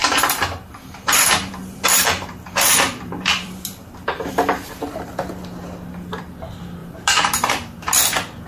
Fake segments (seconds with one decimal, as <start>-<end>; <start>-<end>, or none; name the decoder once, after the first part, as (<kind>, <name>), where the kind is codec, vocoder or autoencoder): 0.0-5.1 (vocoder, BigVGAN v2); 6.8-7.8